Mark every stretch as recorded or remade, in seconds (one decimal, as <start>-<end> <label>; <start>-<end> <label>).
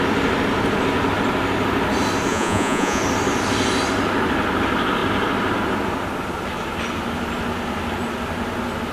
0.0-2.3 recorded; 2.3-3.0 remade; 3.0-8.9 recorded